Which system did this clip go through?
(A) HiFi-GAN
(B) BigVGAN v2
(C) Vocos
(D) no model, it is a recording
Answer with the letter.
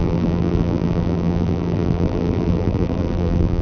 B